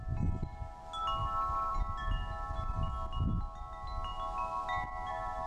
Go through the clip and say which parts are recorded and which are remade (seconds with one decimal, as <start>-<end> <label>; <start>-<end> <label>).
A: 0.0-5.5 recorded